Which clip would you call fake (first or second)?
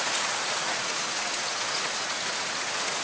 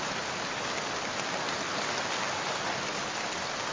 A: first